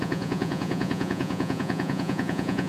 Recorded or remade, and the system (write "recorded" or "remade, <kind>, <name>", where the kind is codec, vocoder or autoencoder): remade, vocoder, Vocos